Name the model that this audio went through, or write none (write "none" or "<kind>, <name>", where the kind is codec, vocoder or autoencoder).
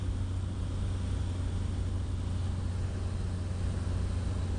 none